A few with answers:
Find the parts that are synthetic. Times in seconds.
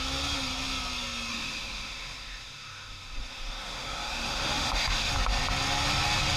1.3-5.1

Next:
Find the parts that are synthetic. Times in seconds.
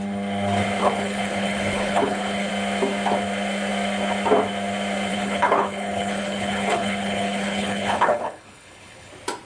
0.8-2.5; 5.1-9.1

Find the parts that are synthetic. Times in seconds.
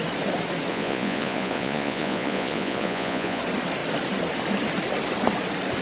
0.7-3.4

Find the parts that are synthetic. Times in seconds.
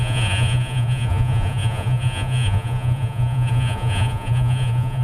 0.0-5.0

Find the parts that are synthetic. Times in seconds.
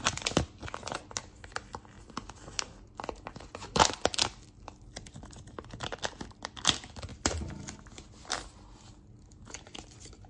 none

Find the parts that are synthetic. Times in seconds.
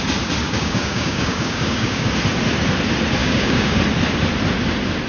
0.4-2.1; 3.2-3.8